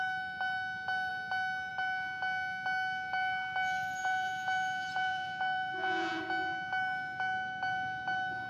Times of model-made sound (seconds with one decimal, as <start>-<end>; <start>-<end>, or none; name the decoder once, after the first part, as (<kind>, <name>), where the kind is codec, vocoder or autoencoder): 4.0-6.2 (vocoder, Vocos)